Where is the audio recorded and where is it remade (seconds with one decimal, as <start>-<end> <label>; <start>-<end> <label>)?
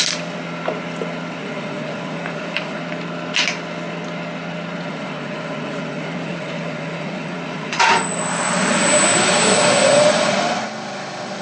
0.0-1.4 recorded; 1.4-2.8 remade; 2.8-4.7 recorded; 4.7-7.9 remade; 7.9-11.4 recorded